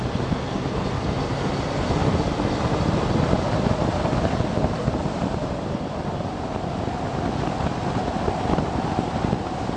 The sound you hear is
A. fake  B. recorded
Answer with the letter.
B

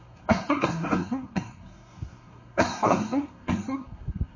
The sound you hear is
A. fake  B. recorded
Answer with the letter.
A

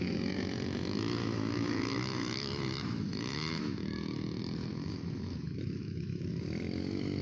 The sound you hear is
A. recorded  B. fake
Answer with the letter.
B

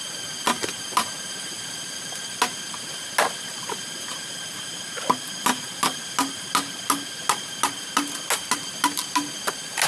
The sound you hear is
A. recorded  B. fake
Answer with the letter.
A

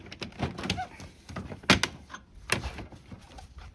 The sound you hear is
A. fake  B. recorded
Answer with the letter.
B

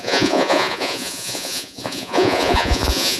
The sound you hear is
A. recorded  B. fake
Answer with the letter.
B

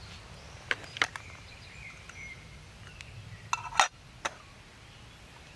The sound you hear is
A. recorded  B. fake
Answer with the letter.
A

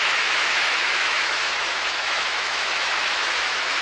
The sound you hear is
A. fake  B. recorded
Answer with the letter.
A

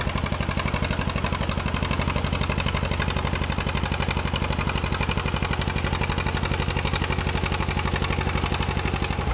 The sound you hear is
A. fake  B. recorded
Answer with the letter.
B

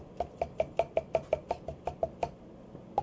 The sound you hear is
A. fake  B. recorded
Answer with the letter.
B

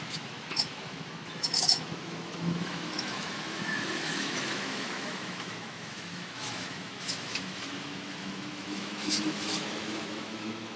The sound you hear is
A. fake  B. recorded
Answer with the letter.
A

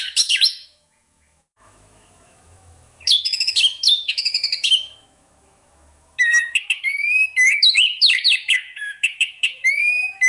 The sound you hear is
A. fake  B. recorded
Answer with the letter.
A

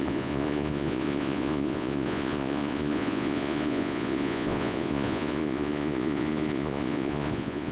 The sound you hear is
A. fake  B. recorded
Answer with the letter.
A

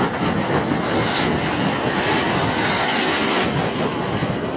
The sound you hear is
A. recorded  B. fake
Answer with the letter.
A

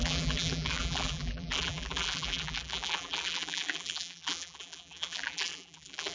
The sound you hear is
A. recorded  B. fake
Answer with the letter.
B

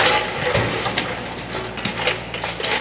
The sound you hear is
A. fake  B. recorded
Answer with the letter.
B